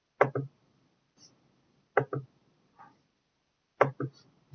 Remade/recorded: recorded